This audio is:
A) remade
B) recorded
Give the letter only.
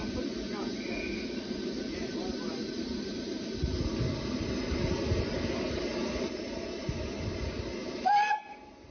B